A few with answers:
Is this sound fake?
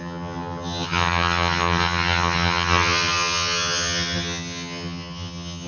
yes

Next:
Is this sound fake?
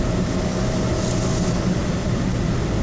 no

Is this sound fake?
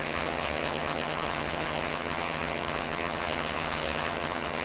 yes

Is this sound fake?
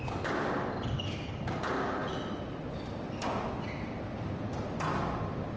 no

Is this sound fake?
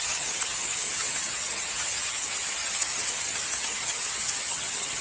yes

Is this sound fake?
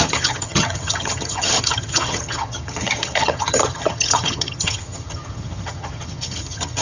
yes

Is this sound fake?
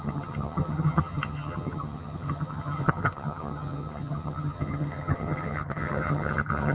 yes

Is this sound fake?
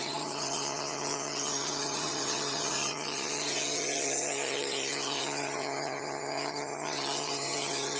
yes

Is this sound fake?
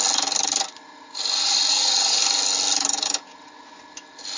no